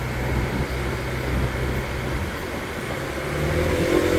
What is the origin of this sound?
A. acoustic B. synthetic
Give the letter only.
A